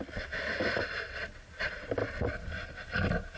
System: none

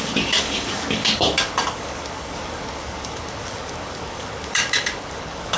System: codec, DAC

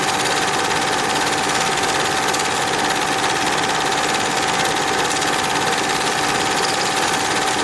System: none